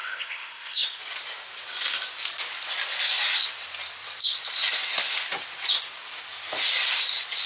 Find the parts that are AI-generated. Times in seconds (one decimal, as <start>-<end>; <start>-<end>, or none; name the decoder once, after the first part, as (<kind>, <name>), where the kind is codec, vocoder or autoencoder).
0.0-1.0 (codec, ZipCodec)